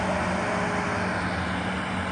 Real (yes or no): yes